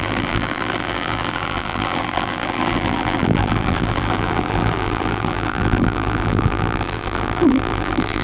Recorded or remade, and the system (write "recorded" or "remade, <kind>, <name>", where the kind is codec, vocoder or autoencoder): remade, vocoder, BigVGAN v2